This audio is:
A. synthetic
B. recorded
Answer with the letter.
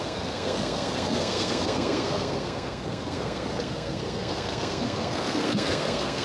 A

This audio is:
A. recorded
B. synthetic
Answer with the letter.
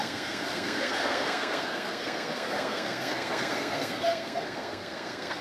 B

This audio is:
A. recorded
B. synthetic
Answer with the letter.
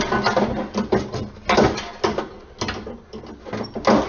A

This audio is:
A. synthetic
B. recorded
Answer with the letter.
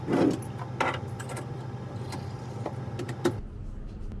B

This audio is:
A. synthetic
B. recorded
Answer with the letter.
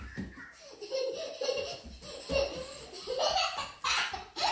B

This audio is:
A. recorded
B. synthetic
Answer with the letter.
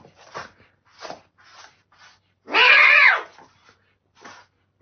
A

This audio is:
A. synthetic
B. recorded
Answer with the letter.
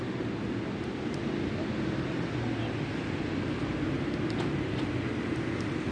B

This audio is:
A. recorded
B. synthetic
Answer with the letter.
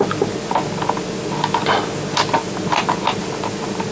A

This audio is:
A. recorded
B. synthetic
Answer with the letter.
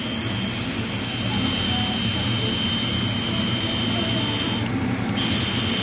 A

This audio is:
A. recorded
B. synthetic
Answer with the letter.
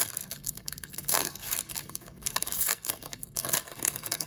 B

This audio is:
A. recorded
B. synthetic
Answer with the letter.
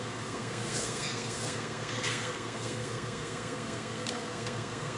B